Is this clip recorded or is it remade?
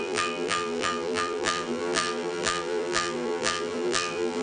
remade